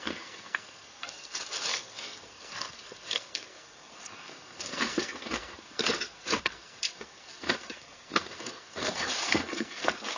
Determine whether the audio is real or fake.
fake